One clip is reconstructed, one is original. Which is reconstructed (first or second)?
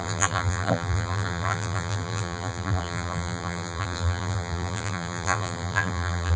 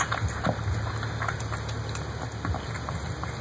first